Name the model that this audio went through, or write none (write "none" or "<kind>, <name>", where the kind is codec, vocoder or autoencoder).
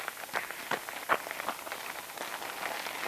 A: none